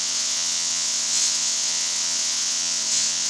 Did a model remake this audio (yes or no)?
yes